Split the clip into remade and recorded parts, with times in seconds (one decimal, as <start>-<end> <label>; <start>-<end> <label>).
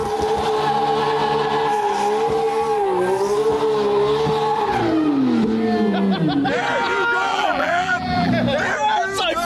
0.0-7.3 recorded; 7.3-8.3 remade; 8.3-9.4 recorded